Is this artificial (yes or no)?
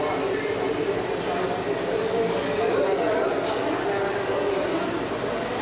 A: no